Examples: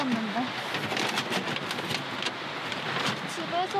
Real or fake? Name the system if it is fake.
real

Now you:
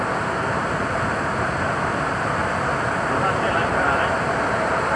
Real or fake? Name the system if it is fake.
fake, vocoder, BigVGAN v2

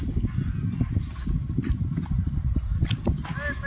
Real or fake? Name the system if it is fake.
real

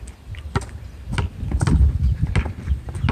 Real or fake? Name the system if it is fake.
real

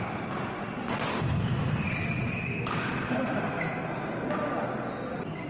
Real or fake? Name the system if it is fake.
real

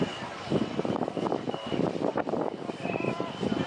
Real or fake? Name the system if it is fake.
fake, vocoder, BigVGAN v2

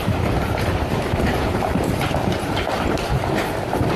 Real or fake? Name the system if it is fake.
fake, vocoder, BigVGAN v2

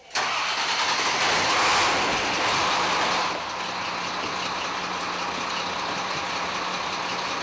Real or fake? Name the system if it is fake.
real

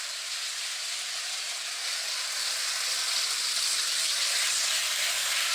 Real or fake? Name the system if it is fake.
fake, vocoder, BigVGAN v2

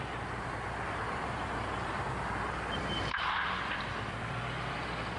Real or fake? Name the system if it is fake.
fake, vocoder, BigVGAN v2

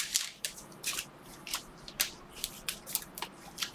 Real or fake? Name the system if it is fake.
fake, vocoder, BigVGAN v2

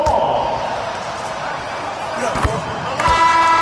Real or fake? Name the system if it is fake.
fake, vocoder, BigVGAN v2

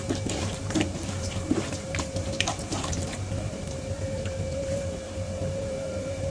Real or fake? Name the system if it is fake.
fake, vocoder, BigVGAN v2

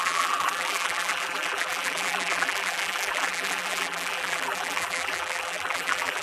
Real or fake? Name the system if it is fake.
fake, vocoder, BigVGAN v2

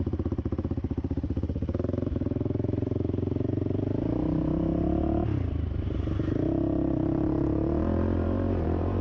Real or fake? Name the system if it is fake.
fake, vocoder, BigVGAN v2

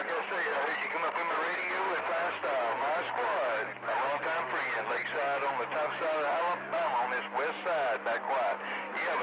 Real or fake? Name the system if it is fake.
real